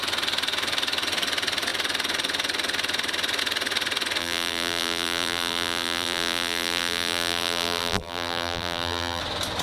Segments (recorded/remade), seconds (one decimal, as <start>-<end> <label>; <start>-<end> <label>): 0.0-4.2 recorded; 4.2-9.2 remade; 9.2-9.6 recorded